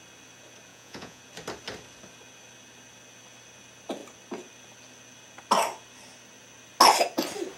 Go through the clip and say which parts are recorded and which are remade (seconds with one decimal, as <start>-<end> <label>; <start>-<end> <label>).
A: 0.0-0.7 recorded; 0.7-1.2 remade; 1.2-7.6 recorded